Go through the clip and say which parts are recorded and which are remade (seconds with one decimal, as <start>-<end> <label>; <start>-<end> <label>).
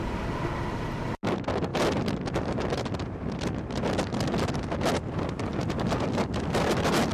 0.0-7.1 recorded